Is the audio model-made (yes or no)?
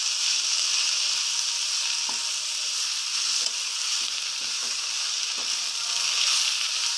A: no